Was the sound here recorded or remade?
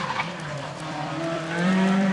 remade